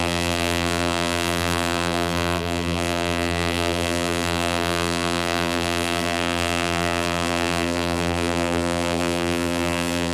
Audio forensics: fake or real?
fake